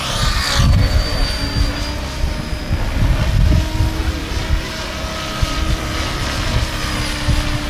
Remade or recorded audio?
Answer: recorded